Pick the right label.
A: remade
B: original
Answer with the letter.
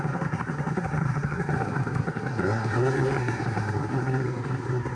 A